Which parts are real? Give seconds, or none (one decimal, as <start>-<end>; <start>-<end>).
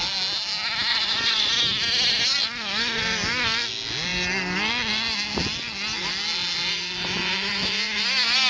0.0-0.9; 1.5-8.5